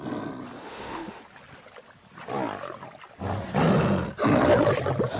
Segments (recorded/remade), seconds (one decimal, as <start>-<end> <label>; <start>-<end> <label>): 0.0-0.6 recorded; 0.6-1.2 remade; 1.2-5.2 recorded